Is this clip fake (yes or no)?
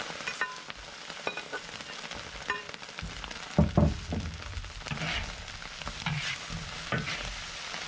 no